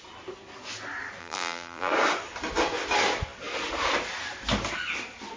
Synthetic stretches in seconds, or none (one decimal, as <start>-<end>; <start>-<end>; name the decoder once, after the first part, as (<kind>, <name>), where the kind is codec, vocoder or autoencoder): 1.2-1.9 (vocoder, BigVGAN v2)